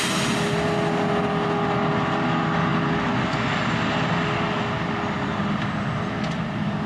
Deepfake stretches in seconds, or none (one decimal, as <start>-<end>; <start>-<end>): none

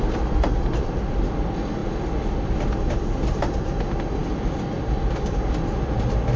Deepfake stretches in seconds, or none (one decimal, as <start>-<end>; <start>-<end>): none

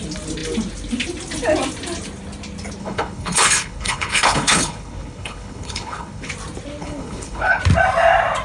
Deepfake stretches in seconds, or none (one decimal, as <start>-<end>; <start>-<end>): 2.8-6.3; 6.8-7.6

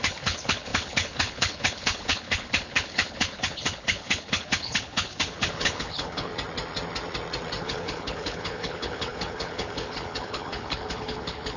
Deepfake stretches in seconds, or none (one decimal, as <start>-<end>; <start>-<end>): 0.0-6.3; 7.6-11.6

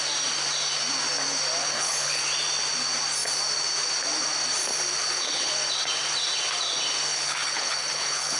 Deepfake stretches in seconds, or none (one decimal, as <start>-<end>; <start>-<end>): 1.6-2.2; 5.0-5.5; 7.1-8.4

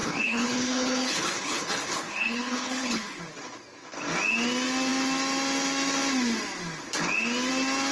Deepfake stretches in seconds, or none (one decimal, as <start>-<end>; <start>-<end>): 0.0-3.2

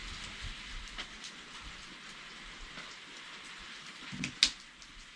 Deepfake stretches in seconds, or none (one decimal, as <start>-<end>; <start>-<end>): none